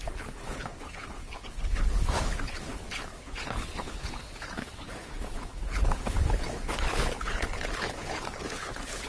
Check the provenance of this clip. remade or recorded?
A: remade